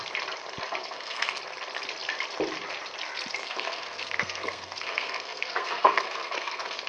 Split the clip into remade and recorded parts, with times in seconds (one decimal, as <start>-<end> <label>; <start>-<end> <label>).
0.0-0.8 recorded; 0.8-1.4 remade; 1.4-3.4 recorded; 3.4-6.9 remade

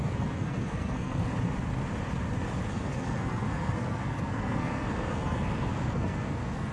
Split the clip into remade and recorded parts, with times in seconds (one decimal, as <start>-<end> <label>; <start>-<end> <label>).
0.0-1.3 remade; 1.3-2.7 recorded; 2.7-6.7 remade

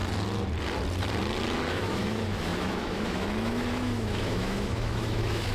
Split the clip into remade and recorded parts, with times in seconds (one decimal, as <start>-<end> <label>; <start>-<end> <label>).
0.0-1.7 recorded; 1.7-5.5 remade

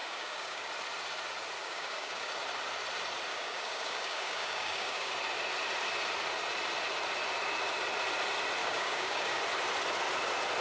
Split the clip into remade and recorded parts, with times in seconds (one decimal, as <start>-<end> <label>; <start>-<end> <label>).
0.0-0.7 remade; 0.7-1.6 recorded; 1.6-2.3 remade; 2.3-3.3 recorded; 3.3-5.1 remade; 5.1-8.6 recorded; 8.6-9.4 remade; 9.4-10.6 recorded

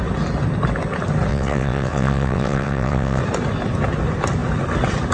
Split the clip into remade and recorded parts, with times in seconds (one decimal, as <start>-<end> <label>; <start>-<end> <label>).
0.0-1.3 recorded; 1.3-3.2 remade; 3.2-5.1 recorded

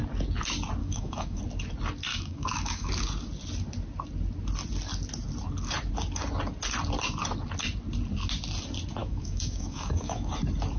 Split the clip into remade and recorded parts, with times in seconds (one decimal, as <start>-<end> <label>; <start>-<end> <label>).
0.0-0.8 recorded; 0.8-1.4 remade; 1.4-2.1 recorded; 2.1-2.9 remade; 2.9-9.0 recorded; 9.0-10.3 remade; 10.3-10.8 recorded

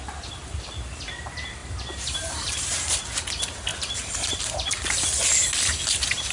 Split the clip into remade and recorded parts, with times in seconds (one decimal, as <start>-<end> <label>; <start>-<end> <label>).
0.0-1.6 recorded; 1.6-3.0 remade; 3.0-3.7 recorded; 3.7-4.9 remade; 4.9-6.3 recorded

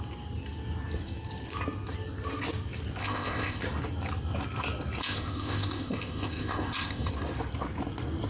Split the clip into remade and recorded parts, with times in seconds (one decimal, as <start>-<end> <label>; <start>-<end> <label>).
0.0-3.0 recorded; 3.0-3.6 remade; 3.6-5.0 recorded; 5.0-7.1 remade; 7.1-8.3 recorded